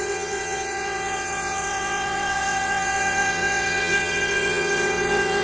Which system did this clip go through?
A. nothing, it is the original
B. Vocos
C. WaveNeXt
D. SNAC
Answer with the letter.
C